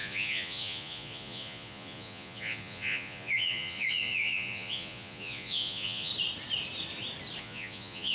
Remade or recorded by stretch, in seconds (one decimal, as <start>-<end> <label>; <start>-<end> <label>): 0.0-6.1 remade; 6.1-7.4 recorded; 7.4-8.1 remade